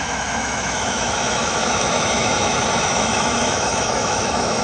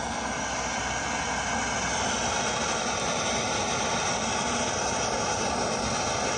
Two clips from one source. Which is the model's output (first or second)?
first